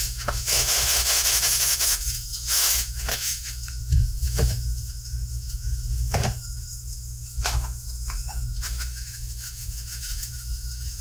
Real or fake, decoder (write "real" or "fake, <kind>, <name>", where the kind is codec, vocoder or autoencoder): fake, autoencoder, DAC-VAE